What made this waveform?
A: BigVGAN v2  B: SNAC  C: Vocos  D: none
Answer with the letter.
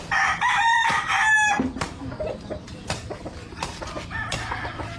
D